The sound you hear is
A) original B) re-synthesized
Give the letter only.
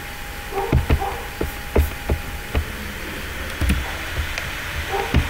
A